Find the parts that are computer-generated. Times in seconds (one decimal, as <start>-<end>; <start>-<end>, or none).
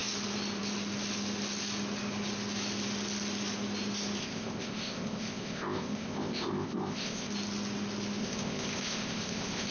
4.2-7.3; 8.2-9.7